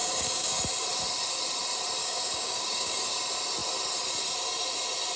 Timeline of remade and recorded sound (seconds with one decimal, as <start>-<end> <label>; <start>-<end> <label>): 0.0-0.6 remade; 0.6-2.0 recorded; 2.0-3.0 remade; 3.0-5.2 recorded